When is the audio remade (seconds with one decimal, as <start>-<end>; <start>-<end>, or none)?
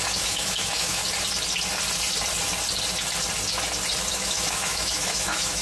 0.0-1.0; 4.1-5.6